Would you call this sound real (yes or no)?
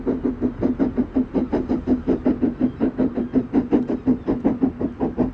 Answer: yes